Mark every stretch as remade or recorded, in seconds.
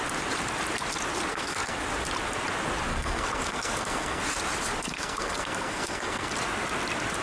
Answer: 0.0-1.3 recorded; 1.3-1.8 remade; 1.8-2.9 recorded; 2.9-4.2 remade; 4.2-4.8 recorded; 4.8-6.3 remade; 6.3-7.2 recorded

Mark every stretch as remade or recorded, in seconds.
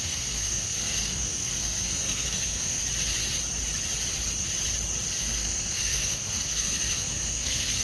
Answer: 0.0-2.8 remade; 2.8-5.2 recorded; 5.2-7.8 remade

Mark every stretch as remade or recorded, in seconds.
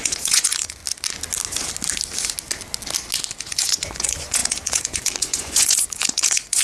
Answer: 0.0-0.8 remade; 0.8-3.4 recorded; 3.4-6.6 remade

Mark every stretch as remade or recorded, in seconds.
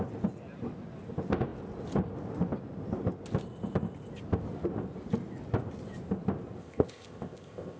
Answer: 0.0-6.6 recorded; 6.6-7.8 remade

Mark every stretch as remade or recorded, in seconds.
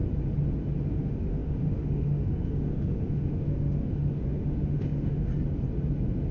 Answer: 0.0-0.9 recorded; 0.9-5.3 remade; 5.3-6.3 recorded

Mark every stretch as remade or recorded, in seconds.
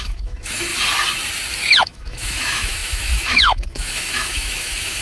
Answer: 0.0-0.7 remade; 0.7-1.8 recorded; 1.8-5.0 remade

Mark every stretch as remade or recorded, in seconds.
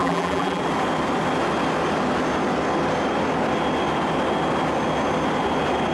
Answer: 0.0-0.6 remade; 0.6-5.9 recorded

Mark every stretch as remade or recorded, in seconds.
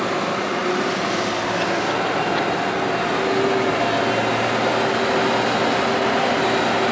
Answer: 0.0-6.9 recorded